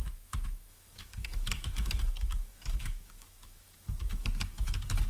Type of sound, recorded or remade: remade